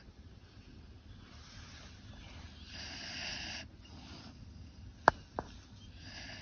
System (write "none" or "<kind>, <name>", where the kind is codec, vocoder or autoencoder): none